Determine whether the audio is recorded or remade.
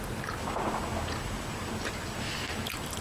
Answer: recorded